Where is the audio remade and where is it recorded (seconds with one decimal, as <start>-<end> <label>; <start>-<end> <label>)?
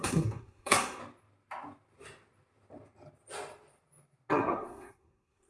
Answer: 0.0-1.0 remade; 1.0-4.3 recorded; 4.3-5.5 remade